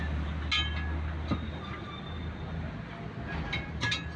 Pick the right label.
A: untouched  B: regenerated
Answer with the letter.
A